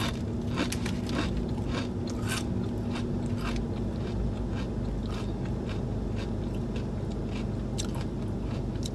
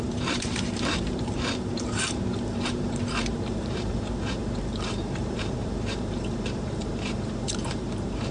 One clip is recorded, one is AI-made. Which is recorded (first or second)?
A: first